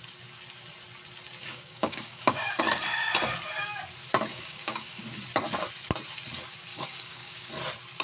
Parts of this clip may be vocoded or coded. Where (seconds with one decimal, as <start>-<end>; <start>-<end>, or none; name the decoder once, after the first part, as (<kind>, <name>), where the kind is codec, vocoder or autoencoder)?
1.5-2.6 (codec, DAC); 4.3-5.2; 6.7-7.5